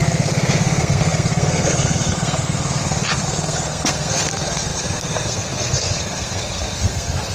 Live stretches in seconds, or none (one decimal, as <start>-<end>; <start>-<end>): none